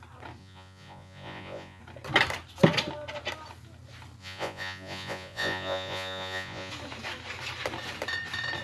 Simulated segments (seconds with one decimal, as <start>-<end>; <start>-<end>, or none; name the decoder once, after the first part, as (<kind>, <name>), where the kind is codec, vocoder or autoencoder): 0.4-1.8 (vocoder, Vocos); 4.2-6.7